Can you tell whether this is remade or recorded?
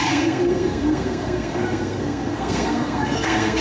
remade